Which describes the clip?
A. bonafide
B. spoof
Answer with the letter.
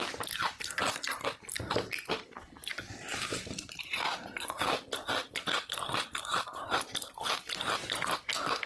A